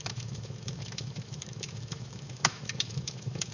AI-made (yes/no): yes